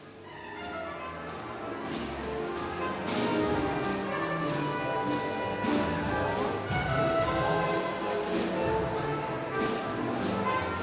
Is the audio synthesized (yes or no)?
no